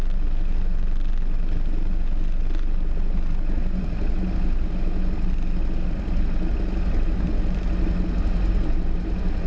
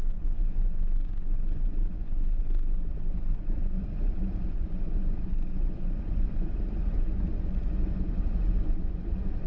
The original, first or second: first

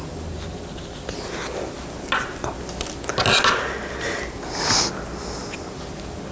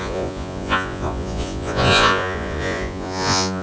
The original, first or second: first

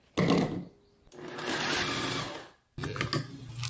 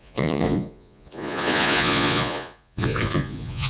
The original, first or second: first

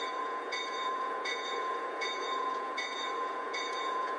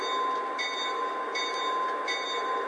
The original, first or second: second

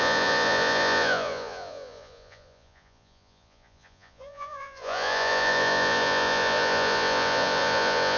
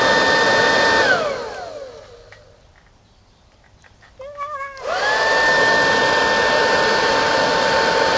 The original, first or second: second